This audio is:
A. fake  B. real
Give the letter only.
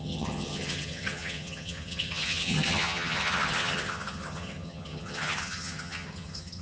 A